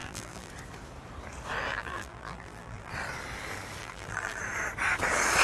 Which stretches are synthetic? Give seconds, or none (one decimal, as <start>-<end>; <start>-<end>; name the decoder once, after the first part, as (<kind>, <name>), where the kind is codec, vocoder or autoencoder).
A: 0.0-0.5 (vocoder, BigVGAN v2); 1.7-2.9; 3.8-4.4